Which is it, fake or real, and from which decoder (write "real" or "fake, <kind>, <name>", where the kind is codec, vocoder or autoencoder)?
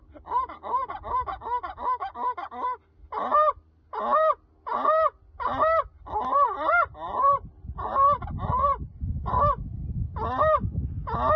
real